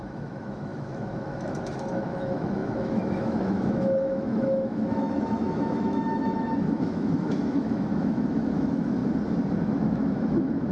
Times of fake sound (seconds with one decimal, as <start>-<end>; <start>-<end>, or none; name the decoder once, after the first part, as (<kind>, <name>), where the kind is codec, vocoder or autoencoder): 0.0-9.0 (autoencoder, DAC-VAE); 9.6-10.7